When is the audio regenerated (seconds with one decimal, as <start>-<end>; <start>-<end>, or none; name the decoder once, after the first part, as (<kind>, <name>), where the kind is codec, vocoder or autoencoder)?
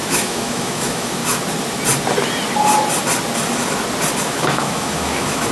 0.0-1.2 (autoencoder, DAC-VAE); 4.2-5.5